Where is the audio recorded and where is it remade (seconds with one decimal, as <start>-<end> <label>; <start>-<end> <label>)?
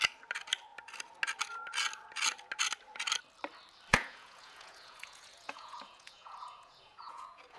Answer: 0.0-3.9 recorded; 3.9-7.6 remade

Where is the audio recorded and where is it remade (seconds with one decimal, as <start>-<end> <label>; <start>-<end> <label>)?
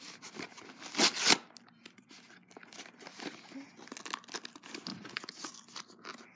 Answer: 0.0-4.9 recorded; 4.9-5.5 remade; 5.5-6.4 recorded